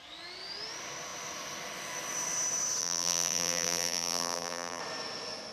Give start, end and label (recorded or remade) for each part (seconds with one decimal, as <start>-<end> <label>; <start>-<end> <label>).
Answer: 0.0-2.8 recorded; 2.8-4.8 remade; 4.8-5.5 recorded